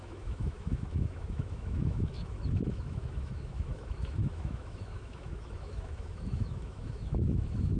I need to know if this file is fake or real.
fake